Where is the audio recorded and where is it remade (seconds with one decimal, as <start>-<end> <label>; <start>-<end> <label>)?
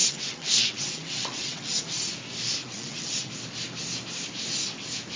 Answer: 0.0-1.8 remade; 1.8-2.6 recorded; 2.6-3.3 remade; 3.3-5.2 recorded